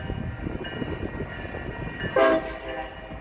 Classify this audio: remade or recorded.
recorded